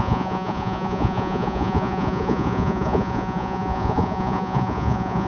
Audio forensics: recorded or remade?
remade